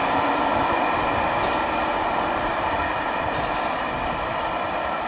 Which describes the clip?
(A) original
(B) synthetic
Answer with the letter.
A